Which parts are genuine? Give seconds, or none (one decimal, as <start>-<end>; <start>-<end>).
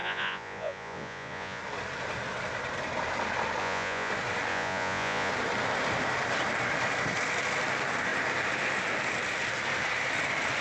1.6-3.6; 4.1-4.5; 5.3-10.6